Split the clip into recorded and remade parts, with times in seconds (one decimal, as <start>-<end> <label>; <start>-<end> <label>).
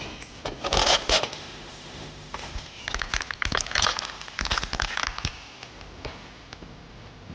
0.0-0.8 recorded; 0.8-2.8 remade; 2.8-3.9 recorded; 3.9-5.0 remade; 5.0-7.3 recorded